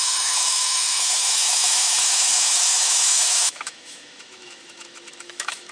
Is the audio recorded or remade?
remade